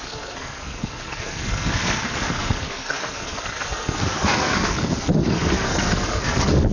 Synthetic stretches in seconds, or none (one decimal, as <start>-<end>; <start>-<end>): 0.0-6.7